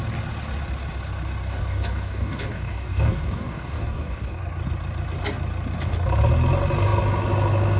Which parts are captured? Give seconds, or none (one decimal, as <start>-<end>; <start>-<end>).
0.0-1.6; 4.4-7.8